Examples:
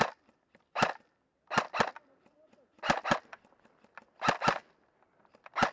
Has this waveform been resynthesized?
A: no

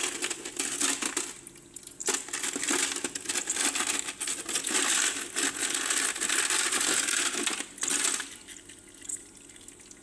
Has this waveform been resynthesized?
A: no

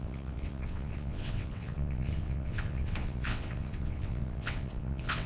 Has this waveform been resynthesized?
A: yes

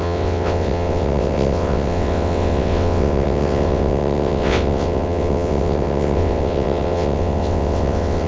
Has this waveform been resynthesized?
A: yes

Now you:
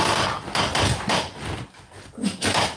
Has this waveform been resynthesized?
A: no